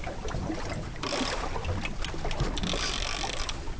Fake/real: real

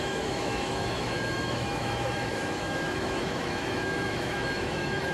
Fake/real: fake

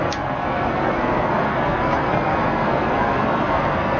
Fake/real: fake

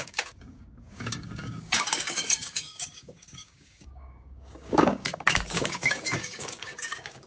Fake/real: fake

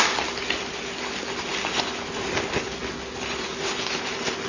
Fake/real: real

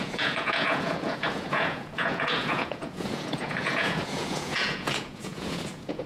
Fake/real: fake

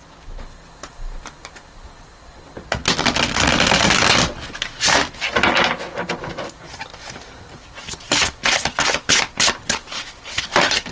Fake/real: real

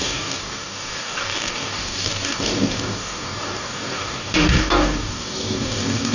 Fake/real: fake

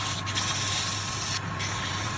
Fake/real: real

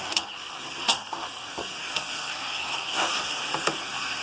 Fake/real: fake